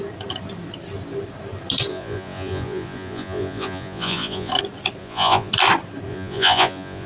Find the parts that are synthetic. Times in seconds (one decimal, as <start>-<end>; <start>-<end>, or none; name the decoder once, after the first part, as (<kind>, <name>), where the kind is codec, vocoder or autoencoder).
1.9-4.5 (vocoder, Vocos); 5.0-5.5; 6.1-7.1